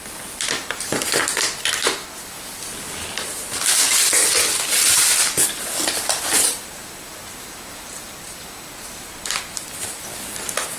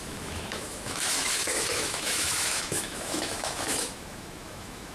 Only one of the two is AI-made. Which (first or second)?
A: second